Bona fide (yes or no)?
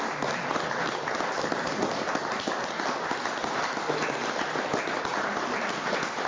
yes